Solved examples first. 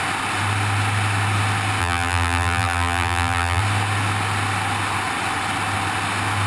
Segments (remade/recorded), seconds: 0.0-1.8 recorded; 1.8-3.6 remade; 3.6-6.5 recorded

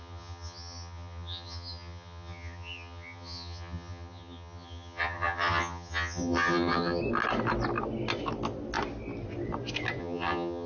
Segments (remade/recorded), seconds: 0.0-7.0 remade; 7.0-10.0 recorded; 10.0-10.7 remade

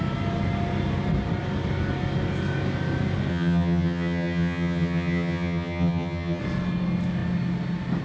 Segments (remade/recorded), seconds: 0.0-3.3 recorded; 3.3-6.4 remade; 6.4-8.0 recorded

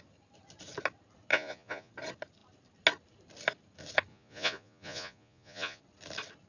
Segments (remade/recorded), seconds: 0.0-1.3 recorded; 1.3-1.9 remade; 1.9-4.1 recorded; 4.1-5.8 remade; 5.8-6.5 recorded

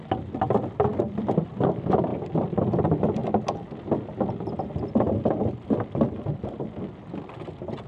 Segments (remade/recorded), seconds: 0.0-7.9 recorded

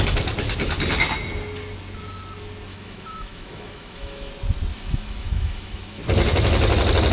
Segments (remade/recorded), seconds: 0.0-2.7 recorded; 2.7-4.3 remade; 4.3-4.7 recorded; 4.7-6.0 remade; 6.0-7.1 recorded

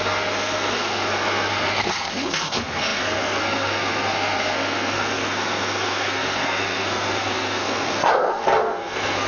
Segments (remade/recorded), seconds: 0.0-9.3 remade

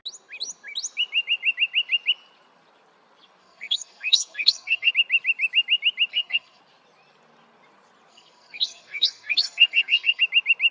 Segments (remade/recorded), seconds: 0.0-3.4 recorded; 3.4-4.9 remade; 4.9-6.1 recorded; 6.1-6.6 remade; 6.6-8.1 recorded; 8.1-10.2 remade; 10.2-10.7 recorded